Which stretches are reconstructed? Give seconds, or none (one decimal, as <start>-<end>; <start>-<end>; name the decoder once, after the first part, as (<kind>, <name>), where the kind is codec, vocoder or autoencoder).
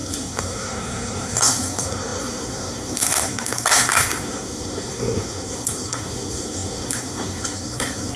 0.0-8.2 (codec, SNAC)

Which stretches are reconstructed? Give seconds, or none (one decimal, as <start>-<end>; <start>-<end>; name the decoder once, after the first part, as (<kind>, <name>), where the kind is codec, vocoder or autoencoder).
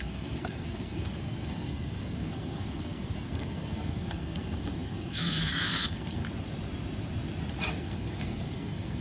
0.0-6.2 (codec, SNAC); 7.7-9.0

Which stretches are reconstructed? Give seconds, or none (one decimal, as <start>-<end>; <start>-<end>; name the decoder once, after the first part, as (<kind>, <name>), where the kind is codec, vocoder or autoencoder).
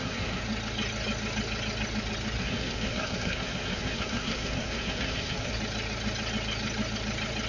0.0-0.4 (codec, SNAC); 2.4-5.5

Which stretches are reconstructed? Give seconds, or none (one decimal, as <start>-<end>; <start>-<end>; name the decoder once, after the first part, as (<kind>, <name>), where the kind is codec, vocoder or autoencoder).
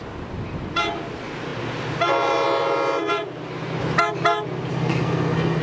4.7-5.6 (codec, SNAC)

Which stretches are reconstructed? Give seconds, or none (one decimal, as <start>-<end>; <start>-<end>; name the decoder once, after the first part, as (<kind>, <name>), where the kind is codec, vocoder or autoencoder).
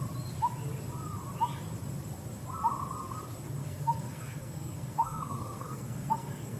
3.6-6.6 (codec, SNAC)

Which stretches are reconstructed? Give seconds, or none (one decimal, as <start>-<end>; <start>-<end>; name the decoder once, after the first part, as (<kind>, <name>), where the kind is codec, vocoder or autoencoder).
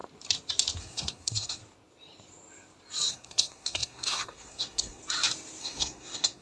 0.8-1.6 (codec, SNAC); 3.1-5.0; 5.6-6.4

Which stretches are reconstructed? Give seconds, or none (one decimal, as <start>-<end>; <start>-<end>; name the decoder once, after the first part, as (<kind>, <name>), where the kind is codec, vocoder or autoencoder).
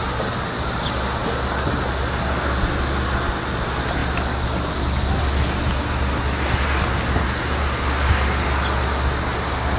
none